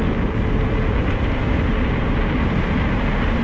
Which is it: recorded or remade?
recorded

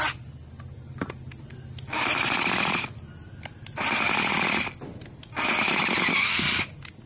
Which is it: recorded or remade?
recorded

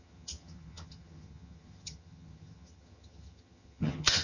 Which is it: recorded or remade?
remade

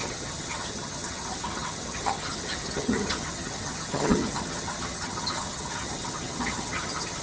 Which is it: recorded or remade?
remade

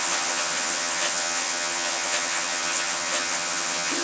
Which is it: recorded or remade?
remade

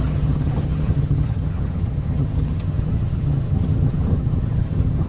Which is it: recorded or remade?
remade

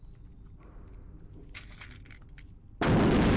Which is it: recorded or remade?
recorded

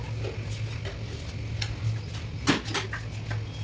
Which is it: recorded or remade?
recorded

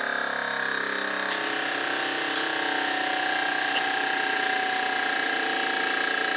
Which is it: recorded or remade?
recorded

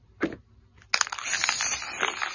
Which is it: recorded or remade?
recorded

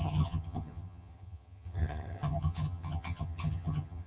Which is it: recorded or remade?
remade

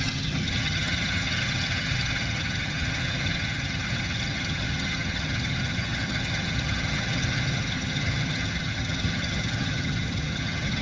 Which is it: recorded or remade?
remade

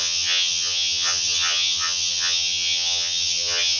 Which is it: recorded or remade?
remade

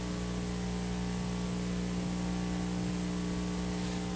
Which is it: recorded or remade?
recorded